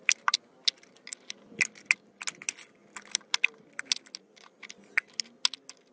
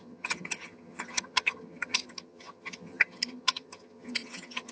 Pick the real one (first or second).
first